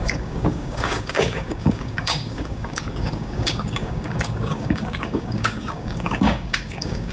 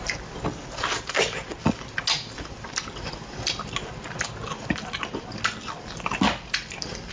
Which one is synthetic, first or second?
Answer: first